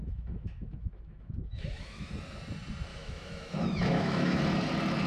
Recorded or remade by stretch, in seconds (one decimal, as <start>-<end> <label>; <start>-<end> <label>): 0.0-2.1 remade; 2.1-2.9 recorded; 2.9-4.4 remade; 4.4-5.1 recorded